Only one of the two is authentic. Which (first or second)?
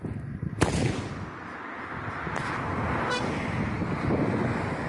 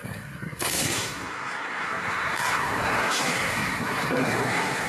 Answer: first